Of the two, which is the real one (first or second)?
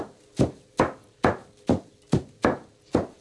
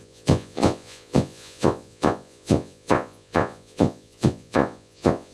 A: first